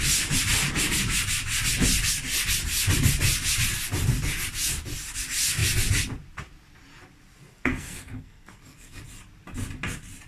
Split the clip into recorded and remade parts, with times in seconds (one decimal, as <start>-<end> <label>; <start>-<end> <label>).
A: 0.0-7.5 recorded; 7.5-9.0 remade; 9.0-10.3 recorded